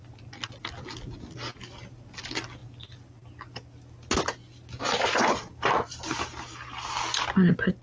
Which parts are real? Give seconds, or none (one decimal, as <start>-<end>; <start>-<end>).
0.0-7.8